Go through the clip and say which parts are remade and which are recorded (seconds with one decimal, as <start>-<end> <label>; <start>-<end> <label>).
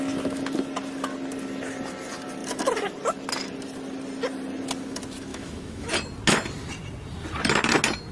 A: 0.0-5.3 recorded; 5.3-5.9 remade; 5.9-8.1 recorded